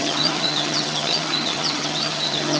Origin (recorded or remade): remade